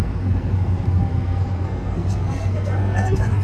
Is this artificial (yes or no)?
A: yes